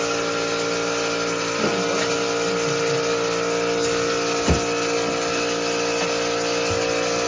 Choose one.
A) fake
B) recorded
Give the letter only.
B